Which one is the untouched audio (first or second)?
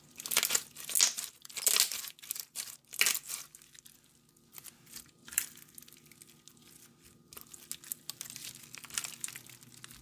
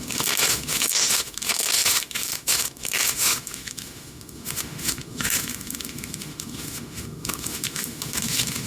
first